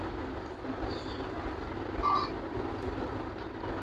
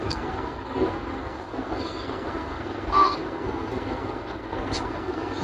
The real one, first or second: first